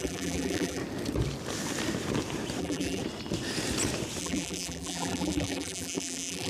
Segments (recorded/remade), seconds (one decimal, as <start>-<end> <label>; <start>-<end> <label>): 0.0-0.8 remade; 0.8-2.6 recorded; 2.6-3.0 remade; 3.0-4.2 recorded; 4.2-6.5 remade